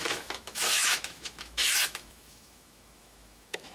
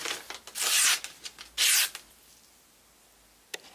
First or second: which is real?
second